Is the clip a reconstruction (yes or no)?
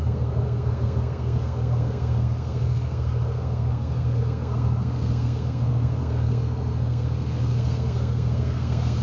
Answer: yes